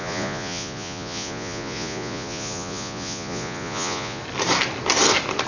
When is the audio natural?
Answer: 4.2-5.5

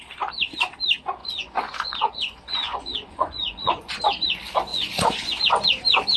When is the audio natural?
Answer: 0.0-1.2; 4.0-4.7; 5.3-6.2

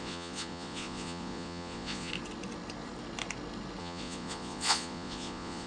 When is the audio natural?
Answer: 2.1-3.8